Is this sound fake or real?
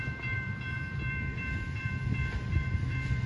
fake